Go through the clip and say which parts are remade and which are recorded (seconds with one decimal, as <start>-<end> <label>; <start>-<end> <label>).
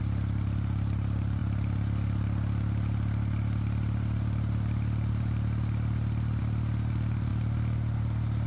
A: 0.0-8.5 remade